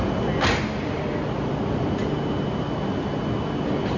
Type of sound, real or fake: real